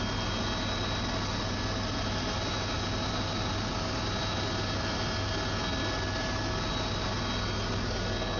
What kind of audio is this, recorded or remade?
recorded